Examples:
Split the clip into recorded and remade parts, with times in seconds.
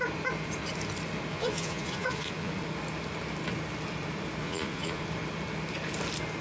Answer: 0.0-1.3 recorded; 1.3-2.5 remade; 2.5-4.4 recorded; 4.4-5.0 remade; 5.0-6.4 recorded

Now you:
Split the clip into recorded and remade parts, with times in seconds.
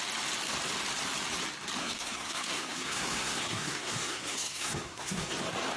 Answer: 0.0-1.8 recorded; 1.8-5.3 remade; 5.3-5.8 recorded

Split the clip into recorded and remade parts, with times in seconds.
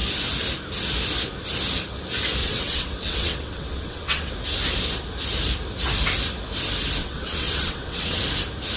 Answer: 0.0-2.4 recorded; 2.4-4.3 remade; 4.3-7.0 recorded; 7.0-8.2 remade; 8.2-8.8 recorded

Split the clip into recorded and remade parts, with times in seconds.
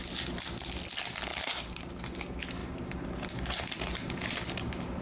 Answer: 0.0-1.3 recorded; 1.3-1.9 remade; 1.9-2.6 recorded; 2.6-5.0 remade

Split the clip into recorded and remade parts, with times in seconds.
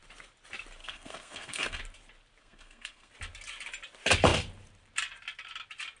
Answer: 0.0-0.8 recorded; 0.8-1.8 remade; 1.8-2.4 recorded; 2.4-3.1 remade; 3.1-6.0 recorded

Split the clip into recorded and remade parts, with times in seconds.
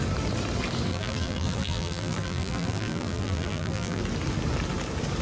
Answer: 0.0-0.9 recorded; 0.9-4.0 remade; 4.0-5.2 recorded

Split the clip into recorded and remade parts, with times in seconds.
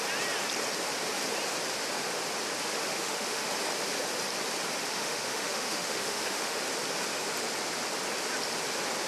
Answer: 0.0-2.8 recorded; 2.8-3.5 remade; 3.5-4.9 recorded; 4.9-6.6 remade; 6.6-9.1 recorded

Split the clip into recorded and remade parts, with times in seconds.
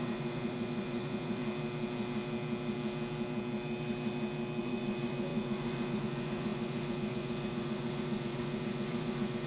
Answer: 0.0-1.4 remade; 1.4-4.6 recorded; 4.6-9.5 remade